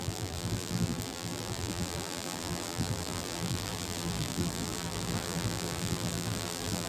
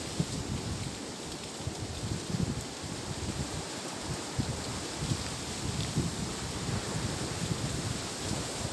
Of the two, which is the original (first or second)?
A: second